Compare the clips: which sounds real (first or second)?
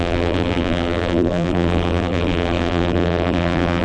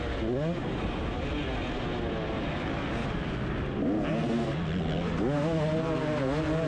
second